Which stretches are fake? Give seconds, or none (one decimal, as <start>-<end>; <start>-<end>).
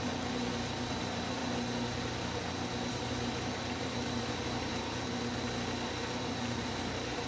0.0-1.4; 2.9-5.1; 6.2-7.3